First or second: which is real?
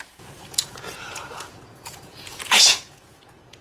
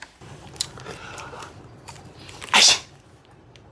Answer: second